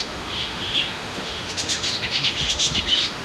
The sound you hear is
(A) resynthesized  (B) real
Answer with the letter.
A